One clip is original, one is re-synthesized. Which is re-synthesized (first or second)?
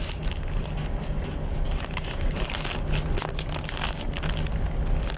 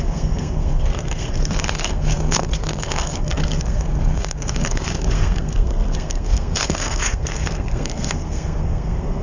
second